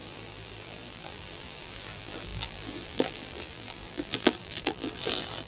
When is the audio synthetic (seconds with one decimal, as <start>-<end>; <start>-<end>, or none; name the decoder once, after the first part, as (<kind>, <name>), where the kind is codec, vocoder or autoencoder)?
0.0-5.5 (vocoder, BigVGAN v2)